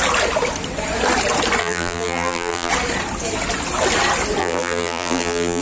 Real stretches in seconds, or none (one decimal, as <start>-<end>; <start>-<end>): 0.0-1.6; 2.7-4.4